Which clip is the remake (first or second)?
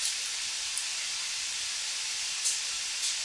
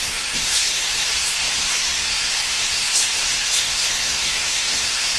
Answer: second